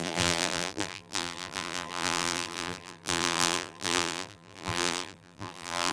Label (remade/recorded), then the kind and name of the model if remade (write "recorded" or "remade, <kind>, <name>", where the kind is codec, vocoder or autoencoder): remade, vocoder, BigVGAN v2